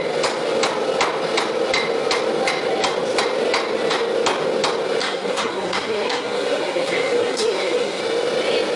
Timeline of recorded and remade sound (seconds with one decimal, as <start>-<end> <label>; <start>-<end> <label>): 0.0-5.0 recorded; 5.0-8.0 remade; 8.0-8.8 recorded